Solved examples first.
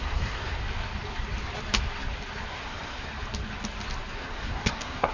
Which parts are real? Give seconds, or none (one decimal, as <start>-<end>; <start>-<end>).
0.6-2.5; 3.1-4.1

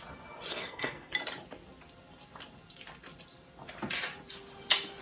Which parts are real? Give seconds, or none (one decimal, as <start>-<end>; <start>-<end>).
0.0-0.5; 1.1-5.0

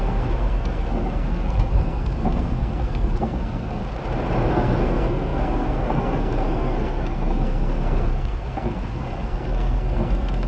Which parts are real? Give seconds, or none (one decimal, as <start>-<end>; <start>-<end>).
3.8-4.5

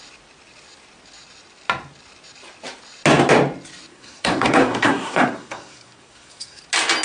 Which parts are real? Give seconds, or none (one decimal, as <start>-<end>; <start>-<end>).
0.0-3.9; 6.6-7.0